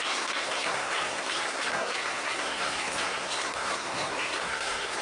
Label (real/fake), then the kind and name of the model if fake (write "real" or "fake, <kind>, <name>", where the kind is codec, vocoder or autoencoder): fake, codec, SNAC